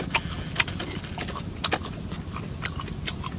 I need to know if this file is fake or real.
real